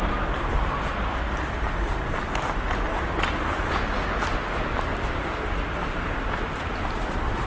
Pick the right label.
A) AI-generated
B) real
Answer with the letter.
B